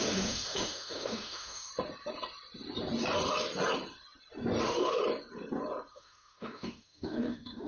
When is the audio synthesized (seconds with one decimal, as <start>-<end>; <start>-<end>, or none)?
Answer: 0.0-1.7; 4.6-5.0; 5.9-7.7